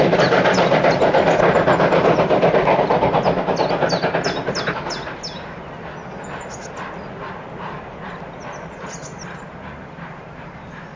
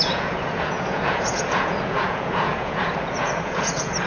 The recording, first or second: first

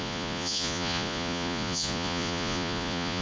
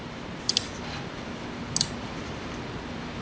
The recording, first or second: second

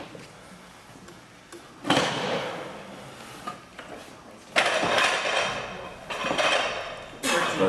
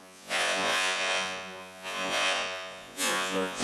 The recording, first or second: first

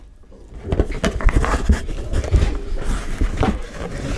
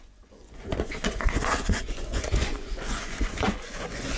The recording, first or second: first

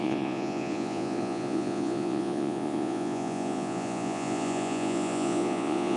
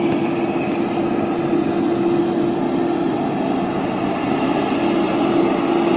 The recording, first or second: second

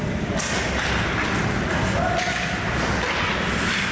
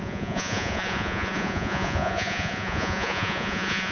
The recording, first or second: first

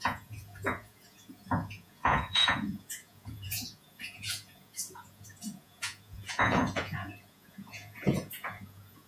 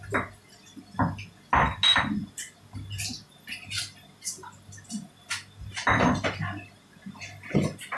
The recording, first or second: second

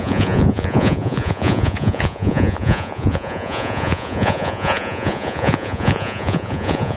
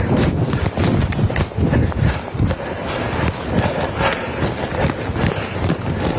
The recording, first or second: second